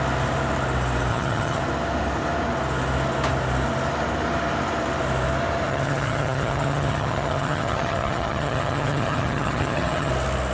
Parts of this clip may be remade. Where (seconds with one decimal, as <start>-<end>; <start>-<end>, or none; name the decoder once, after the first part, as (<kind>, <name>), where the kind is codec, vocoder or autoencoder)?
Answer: 1.1-1.6 (vocoder, HiFi-GAN); 5.7-10.1